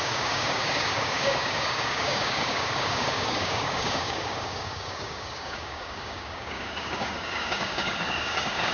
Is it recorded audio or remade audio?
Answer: remade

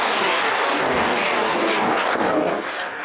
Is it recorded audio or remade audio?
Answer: remade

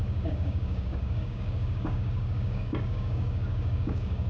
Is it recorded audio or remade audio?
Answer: remade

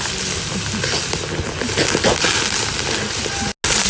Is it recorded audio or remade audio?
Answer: recorded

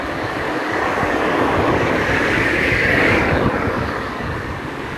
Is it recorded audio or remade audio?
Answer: remade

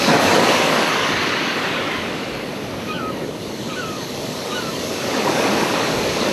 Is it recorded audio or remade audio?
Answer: remade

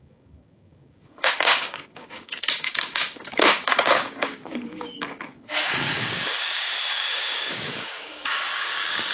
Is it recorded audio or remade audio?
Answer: remade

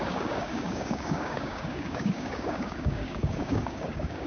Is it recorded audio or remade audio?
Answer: remade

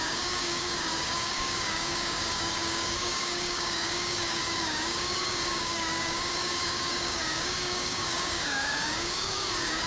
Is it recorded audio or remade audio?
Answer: remade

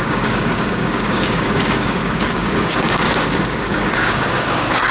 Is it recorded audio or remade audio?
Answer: remade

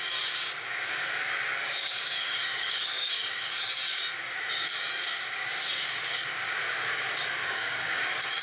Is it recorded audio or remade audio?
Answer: remade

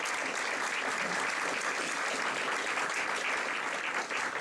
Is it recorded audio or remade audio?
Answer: recorded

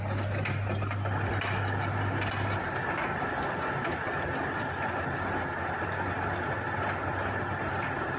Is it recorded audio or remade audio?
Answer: recorded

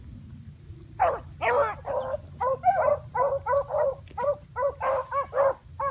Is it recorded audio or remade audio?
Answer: recorded